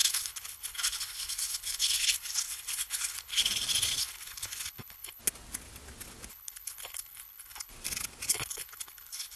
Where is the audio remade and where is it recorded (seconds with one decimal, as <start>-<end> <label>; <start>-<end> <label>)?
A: 0.0-3.4 remade; 3.4-4.0 recorded; 4.0-5.2 remade; 5.2-6.3 recorded; 6.3-7.7 remade; 7.7-8.3 recorded; 8.3-9.4 remade